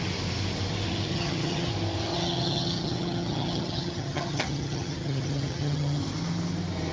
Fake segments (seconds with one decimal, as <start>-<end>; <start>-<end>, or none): 1.1-1.7; 2.1-6.0